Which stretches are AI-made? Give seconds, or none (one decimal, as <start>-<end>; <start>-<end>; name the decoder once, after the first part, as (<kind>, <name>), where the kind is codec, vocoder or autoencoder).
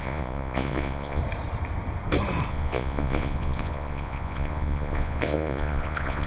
0.0-1.2 (vocoder, Vocos); 2.5-6.3